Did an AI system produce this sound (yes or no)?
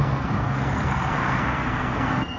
yes